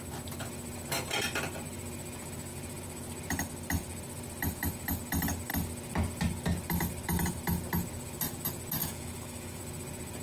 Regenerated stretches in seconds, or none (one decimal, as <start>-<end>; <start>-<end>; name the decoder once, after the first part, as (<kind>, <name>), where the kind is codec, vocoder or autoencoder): 8.8-9.6 (autoencoder, DAC-VAE)